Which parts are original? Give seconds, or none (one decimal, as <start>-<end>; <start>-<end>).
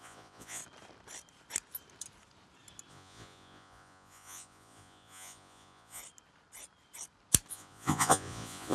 0.6-2.9; 6.0-7.5